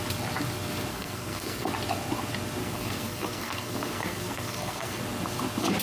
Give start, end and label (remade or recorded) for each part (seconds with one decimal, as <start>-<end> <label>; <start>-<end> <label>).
0.0-0.9 recorded; 0.9-1.7 remade; 1.7-2.6 recorded; 2.6-5.0 remade; 5.0-5.8 recorded